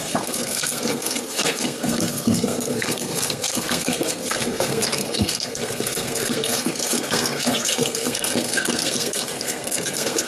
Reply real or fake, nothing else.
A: fake